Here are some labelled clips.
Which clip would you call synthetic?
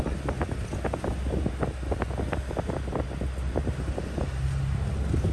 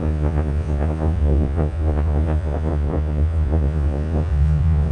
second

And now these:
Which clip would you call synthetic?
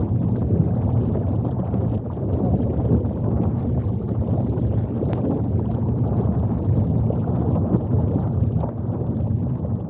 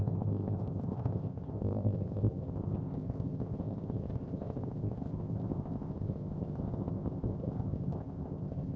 second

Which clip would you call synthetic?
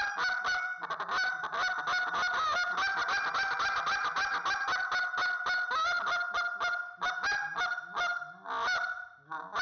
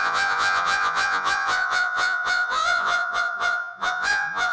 second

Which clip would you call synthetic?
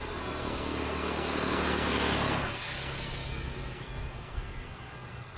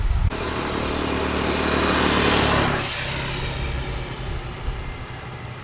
first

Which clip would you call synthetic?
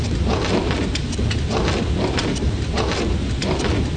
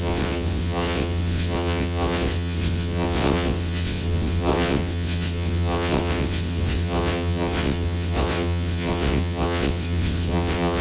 second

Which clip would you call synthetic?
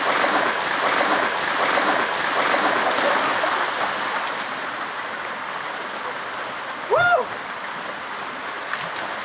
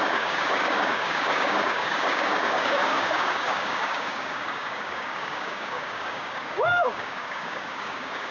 second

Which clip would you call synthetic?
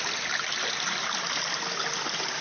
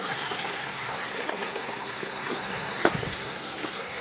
second